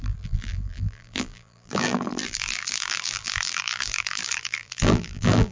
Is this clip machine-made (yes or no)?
yes